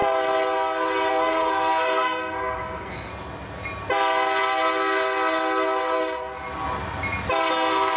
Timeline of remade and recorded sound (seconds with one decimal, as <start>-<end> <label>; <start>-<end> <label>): 0.0-1.1 recorded; 1.1-3.1 remade; 3.1-7.5 recorded; 7.5-8.0 remade